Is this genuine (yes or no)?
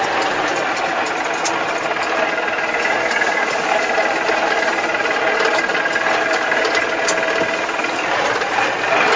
yes